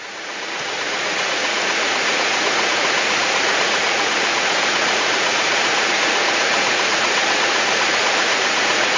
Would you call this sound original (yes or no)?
no